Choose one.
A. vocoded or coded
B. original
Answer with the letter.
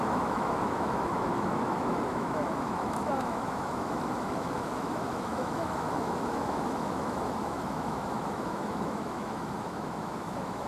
A